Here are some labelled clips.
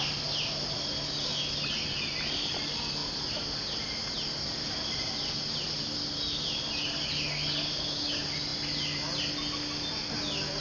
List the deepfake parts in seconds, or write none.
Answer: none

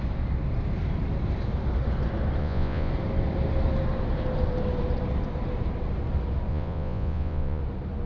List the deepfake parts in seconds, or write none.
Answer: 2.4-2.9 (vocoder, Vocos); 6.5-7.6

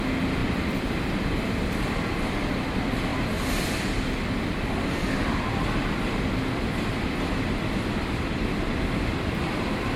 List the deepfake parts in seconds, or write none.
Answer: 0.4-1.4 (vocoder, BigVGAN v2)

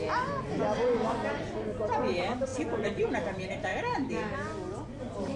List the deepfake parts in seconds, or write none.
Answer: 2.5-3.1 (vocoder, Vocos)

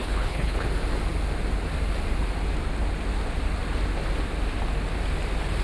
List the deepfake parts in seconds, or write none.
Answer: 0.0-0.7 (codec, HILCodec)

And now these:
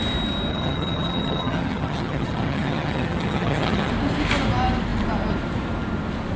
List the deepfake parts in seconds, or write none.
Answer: 0.5-3.9 (vocoder, HiFi-GAN)